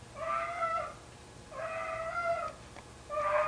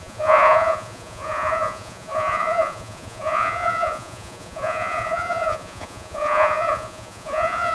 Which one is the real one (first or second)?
first